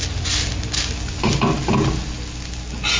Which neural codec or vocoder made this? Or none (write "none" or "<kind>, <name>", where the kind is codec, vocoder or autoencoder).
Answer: none